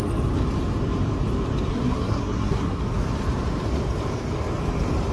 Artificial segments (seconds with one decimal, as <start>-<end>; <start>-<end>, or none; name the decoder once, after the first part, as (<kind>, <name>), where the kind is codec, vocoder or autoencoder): 1.7-2.8 (codec, SNAC)